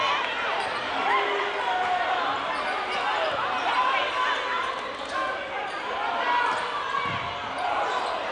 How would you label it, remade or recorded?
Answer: recorded